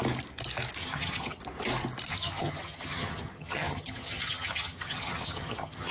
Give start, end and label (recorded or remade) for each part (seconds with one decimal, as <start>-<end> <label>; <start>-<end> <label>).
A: 0.0-0.8 recorded; 0.8-1.4 remade; 1.4-2.1 recorded; 2.1-5.9 remade